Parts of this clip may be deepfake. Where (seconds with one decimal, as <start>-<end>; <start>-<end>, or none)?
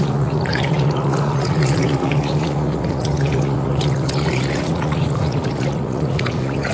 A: 0.0-6.7